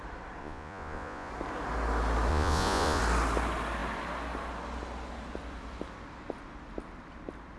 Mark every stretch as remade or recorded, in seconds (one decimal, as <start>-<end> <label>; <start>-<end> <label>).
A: 0.0-0.4 recorded; 0.4-1.3 remade; 1.3-2.3 recorded; 2.3-3.0 remade; 3.0-7.6 recorded